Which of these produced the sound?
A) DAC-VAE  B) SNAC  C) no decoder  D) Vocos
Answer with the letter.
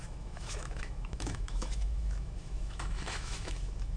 A